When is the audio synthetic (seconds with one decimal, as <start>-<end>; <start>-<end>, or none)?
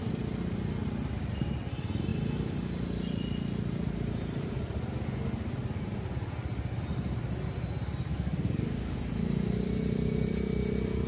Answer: 8.1-9.0